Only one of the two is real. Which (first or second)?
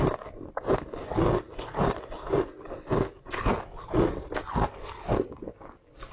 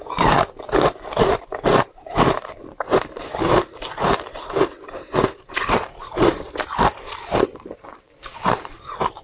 first